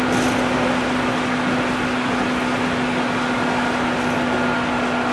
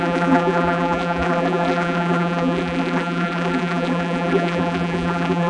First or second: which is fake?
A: second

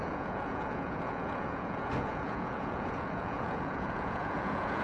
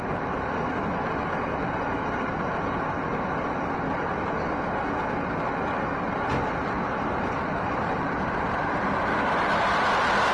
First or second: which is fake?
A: first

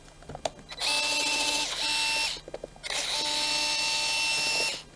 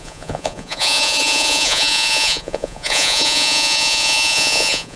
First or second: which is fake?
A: second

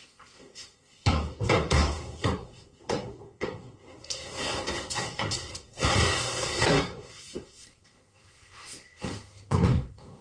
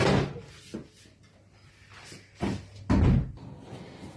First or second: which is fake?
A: first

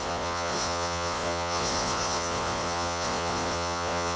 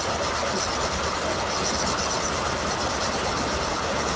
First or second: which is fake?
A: first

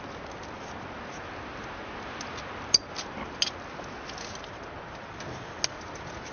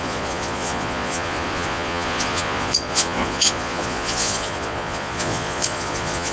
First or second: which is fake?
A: second